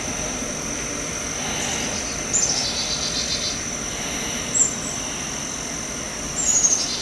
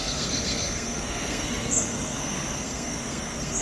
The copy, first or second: second